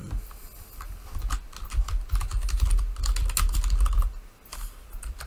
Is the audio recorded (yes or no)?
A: yes